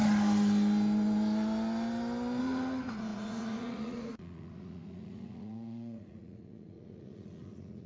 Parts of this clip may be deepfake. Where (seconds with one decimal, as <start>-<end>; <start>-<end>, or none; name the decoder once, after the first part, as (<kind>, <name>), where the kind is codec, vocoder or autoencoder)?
2.4-7.9 (vocoder, Vocos)

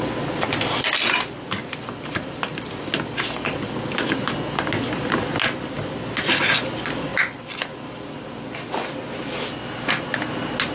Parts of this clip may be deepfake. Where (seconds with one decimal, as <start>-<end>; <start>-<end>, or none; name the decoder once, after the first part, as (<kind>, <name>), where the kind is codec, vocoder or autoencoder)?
1.6-3.1 (vocoder, BigVGAN v2); 7.1-7.9

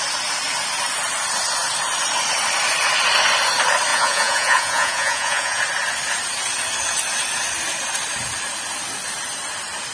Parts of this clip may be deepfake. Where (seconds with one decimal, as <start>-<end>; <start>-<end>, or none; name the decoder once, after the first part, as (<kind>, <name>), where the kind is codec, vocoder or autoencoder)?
3.9-5.6 (vocoder, Vocos)